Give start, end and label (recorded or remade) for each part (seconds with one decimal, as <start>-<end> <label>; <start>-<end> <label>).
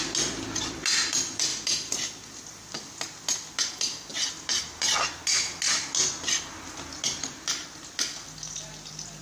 0.0-9.2 recorded